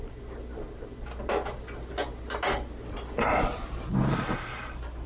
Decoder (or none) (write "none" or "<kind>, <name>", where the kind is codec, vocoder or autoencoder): none